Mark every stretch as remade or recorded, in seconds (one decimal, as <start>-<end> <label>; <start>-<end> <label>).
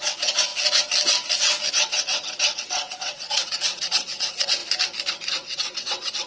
0.0-0.5 remade; 0.5-1.7 recorded; 1.7-4.6 remade; 4.6-5.3 recorded; 5.3-6.3 remade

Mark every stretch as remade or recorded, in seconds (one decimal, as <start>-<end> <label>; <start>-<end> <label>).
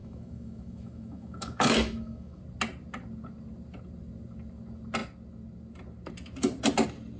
0.0-2.4 remade; 2.4-7.2 recorded